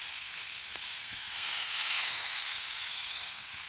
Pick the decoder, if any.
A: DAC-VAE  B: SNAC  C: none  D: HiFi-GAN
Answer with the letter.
B